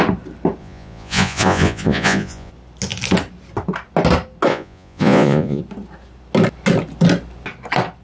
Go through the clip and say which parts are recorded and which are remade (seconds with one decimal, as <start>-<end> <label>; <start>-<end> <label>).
0.0-0.6 recorded; 0.6-2.5 remade; 2.5-4.5 recorded; 4.5-5.6 remade; 5.6-8.0 recorded